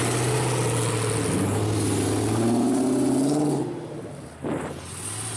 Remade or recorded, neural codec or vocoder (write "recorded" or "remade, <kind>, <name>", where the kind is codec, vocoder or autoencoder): recorded